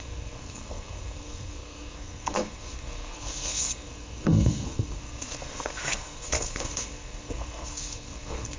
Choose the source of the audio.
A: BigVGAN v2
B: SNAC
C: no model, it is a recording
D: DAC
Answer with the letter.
B